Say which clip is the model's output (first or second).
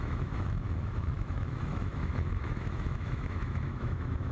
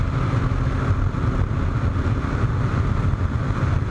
first